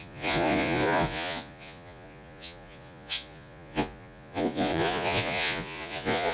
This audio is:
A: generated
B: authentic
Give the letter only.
A